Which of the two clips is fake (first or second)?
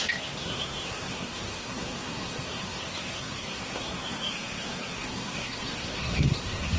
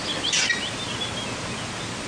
first